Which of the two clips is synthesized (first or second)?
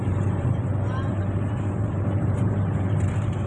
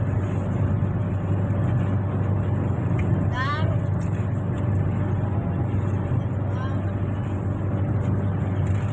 first